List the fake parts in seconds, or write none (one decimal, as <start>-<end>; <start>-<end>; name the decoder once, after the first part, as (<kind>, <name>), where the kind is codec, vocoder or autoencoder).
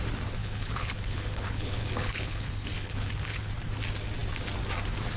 0.4-3.5 (codec, HILCodec)